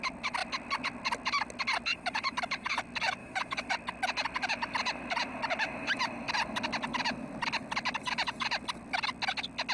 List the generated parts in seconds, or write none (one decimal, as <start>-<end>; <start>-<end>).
1.9-2.8; 3.2-3.7